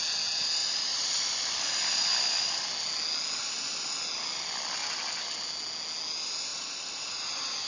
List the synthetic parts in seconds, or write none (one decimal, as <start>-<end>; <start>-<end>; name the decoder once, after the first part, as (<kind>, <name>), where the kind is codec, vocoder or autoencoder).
0.6-2.5 (vocoder, BigVGAN v2); 6.5-7.1